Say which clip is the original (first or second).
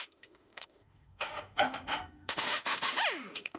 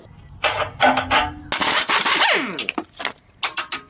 second